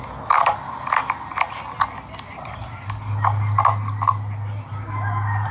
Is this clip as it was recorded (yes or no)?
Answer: yes